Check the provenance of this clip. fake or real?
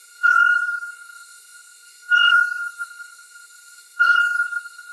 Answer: fake